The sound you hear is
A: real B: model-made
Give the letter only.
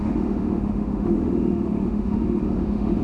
B